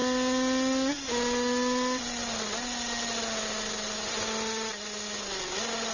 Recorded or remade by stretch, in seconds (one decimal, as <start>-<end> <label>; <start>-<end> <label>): 0.0-5.9 recorded